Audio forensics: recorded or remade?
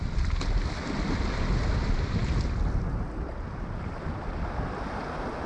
recorded